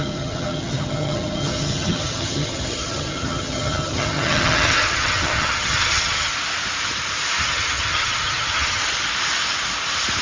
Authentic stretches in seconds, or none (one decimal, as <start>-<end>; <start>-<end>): 6.3-7.4; 8.8-10.2